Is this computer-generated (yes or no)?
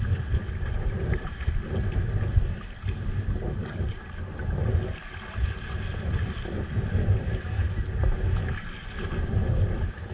no